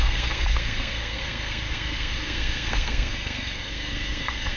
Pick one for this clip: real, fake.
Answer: fake